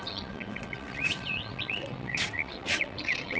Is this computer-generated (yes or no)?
yes